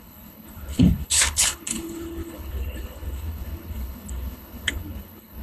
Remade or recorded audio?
remade